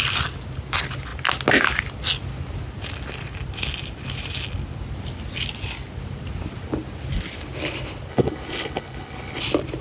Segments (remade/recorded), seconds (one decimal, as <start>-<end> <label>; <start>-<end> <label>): 0.0-8.1 recorded; 8.1-9.4 remade; 9.4-9.8 recorded